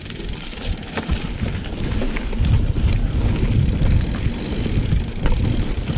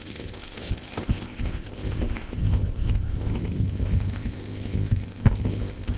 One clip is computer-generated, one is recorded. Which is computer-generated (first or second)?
second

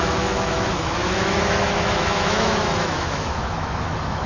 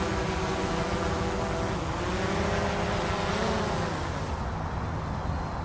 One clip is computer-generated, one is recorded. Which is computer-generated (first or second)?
first